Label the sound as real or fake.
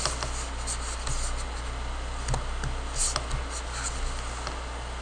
real